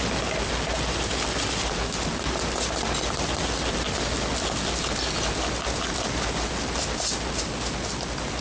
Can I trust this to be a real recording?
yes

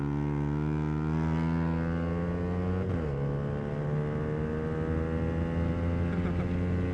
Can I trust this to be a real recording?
yes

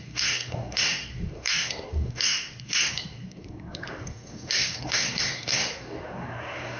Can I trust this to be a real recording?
no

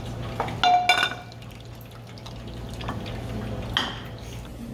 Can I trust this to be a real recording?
yes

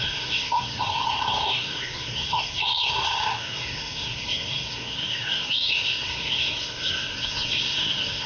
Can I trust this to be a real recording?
no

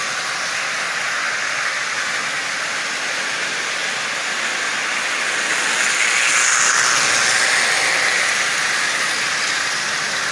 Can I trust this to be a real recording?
yes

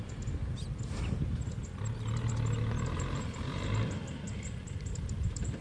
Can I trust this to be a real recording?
yes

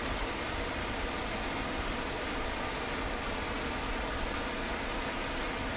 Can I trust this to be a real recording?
yes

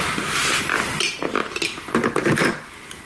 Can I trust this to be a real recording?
yes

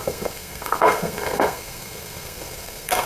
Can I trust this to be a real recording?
no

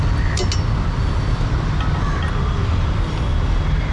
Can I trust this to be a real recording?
yes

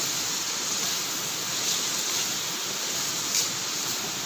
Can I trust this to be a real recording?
yes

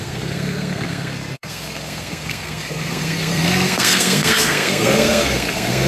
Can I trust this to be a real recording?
no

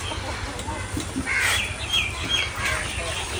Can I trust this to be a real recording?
yes